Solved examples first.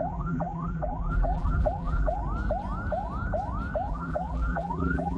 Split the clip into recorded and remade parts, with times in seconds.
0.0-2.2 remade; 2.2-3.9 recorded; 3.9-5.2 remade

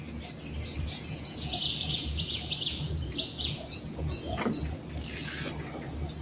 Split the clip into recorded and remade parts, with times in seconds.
0.0-0.7 recorded; 0.7-4.4 remade; 4.4-6.2 recorded

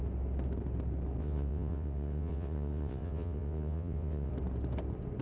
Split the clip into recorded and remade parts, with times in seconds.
0.0-1.2 recorded; 1.2-4.3 remade; 4.3-5.2 recorded

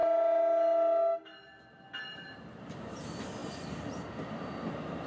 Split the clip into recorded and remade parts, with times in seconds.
0.0-2.9 recorded; 2.9-5.1 remade

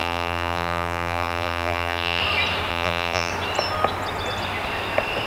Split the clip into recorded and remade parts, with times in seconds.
0.0-2.2 remade; 2.2-2.7 recorded; 2.7-3.3 remade; 3.3-5.3 recorded

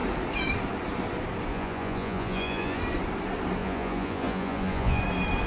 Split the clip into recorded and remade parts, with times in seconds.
0.0-1.5 recorded; 1.5-2.8 remade; 2.8-3.6 recorded; 3.6-5.0 remade; 5.0-5.5 recorded